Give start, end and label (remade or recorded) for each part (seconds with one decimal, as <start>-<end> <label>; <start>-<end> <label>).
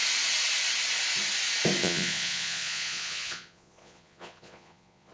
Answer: 0.0-1.8 recorded; 1.8-5.1 remade